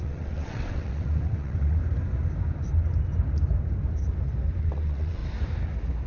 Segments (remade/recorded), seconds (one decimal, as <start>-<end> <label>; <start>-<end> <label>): 0.0-1.8 remade; 1.8-4.6 recorded; 4.6-5.2 remade; 5.2-6.1 recorded